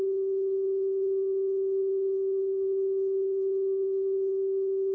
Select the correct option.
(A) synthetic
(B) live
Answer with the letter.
A